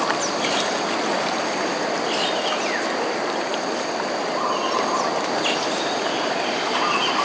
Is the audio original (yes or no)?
yes